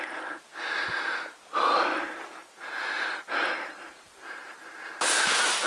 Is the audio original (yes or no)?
yes